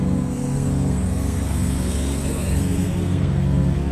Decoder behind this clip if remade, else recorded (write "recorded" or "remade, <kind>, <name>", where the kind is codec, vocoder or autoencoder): remade, codec, SNAC